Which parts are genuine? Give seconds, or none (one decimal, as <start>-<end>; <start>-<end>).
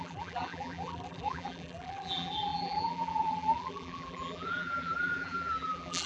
none